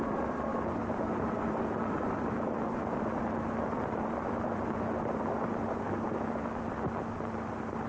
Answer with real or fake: fake